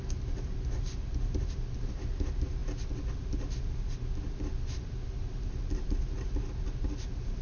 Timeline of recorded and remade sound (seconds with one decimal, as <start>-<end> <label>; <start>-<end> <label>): 0.0-7.4 recorded